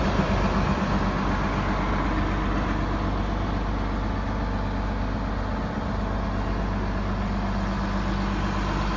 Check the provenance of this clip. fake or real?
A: real